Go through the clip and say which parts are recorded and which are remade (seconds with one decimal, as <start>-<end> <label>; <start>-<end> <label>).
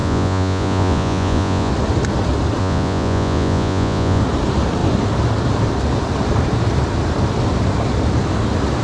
0.0-1.7 remade; 1.7-2.6 recorded; 2.6-4.2 remade; 4.2-8.8 recorded